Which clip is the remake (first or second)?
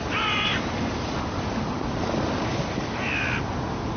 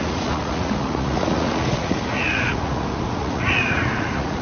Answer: second